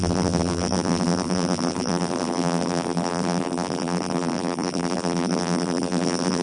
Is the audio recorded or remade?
remade